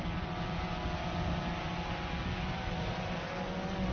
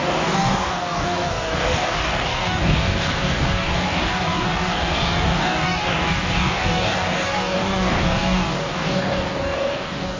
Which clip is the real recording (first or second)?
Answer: first